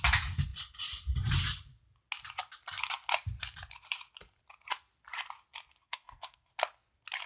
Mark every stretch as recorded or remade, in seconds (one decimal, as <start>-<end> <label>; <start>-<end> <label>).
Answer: 0.0-5.8 recorded; 5.8-6.5 remade; 6.5-7.3 recorded